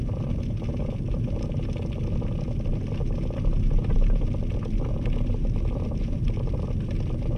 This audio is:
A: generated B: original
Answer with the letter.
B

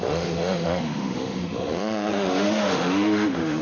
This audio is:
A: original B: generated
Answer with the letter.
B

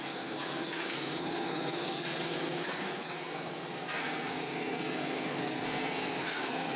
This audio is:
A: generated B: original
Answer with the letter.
A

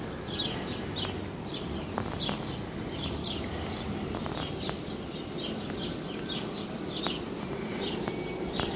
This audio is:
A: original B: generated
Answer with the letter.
A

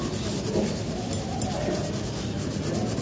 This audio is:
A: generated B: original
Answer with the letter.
B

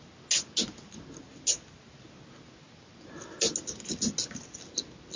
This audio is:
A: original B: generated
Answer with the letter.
A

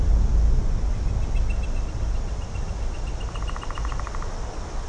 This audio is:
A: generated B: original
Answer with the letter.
B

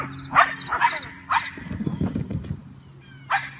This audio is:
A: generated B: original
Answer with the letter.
B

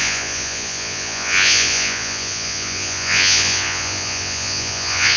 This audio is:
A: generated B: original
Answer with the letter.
A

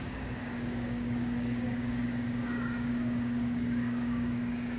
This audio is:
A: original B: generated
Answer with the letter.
B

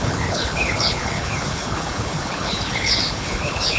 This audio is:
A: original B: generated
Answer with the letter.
B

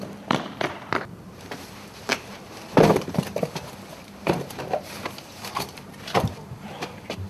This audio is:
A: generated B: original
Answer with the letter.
A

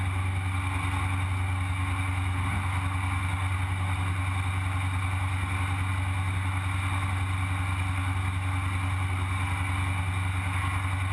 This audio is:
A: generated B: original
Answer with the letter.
B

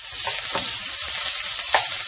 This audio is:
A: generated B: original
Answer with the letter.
B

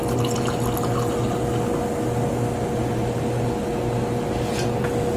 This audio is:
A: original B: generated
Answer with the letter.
A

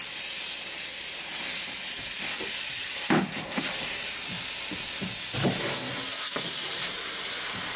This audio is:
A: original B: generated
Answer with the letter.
A